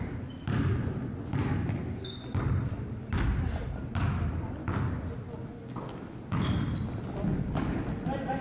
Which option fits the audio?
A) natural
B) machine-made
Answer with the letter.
A